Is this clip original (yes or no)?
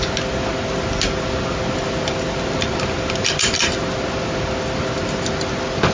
yes